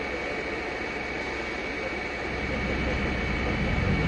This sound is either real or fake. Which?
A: real